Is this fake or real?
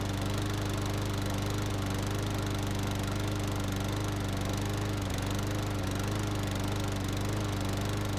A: real